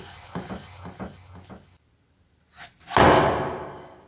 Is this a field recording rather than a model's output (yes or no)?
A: yes